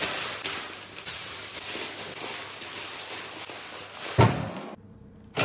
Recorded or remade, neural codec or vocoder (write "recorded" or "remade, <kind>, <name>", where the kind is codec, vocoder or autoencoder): recorded